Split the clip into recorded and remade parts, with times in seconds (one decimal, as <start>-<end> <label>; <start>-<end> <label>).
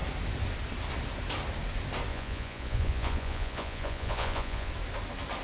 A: 0.0-2.1 recorded; 2.1-4.7 remade; 4.7-5.4 recorded